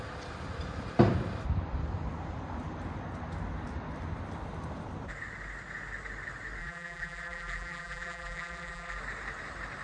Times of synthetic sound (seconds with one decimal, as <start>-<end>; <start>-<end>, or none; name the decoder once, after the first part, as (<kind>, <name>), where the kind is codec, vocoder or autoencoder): 6.6-9.0 (vocoder, BigVGAN v2)